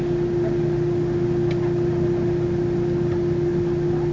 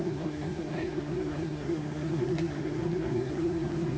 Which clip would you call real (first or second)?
first